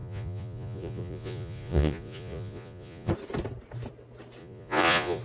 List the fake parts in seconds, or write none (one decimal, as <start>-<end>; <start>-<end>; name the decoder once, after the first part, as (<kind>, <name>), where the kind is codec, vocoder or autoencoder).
0.0-3.1 (vocoder, Vocos); 4.4-5.2